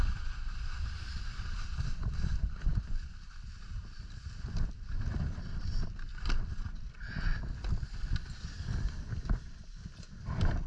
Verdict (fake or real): real